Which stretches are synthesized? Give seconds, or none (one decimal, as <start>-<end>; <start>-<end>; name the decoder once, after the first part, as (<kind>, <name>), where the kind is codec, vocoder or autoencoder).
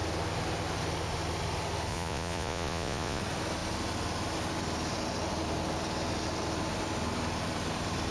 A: 1.9-3.2 (vocoder, Vocos)